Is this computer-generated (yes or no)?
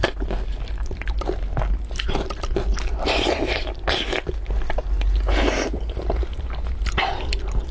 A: no